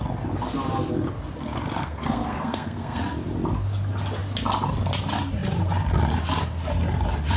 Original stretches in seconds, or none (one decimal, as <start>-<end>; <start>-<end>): 0.0-1.8; 3.0-7.4